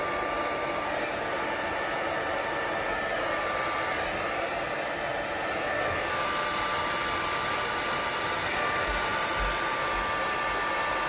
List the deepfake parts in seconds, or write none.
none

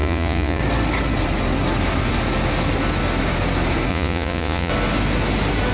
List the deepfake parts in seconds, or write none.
0.0-0.6; 3.9-4.7

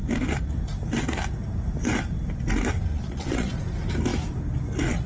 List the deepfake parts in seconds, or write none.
2.9-3.5

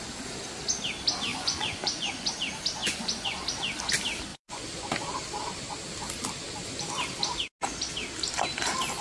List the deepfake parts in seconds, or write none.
1.3-2.3; 2.8-3.4; 4.3-4.9